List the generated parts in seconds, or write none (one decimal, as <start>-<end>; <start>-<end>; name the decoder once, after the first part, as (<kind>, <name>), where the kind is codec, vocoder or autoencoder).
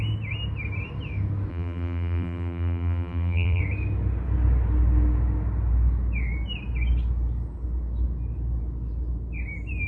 1.5-3.6 (vocoder, BigVGAN v2)